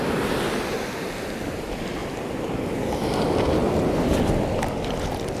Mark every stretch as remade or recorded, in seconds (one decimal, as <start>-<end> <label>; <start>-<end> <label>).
0.0-5.4 recorded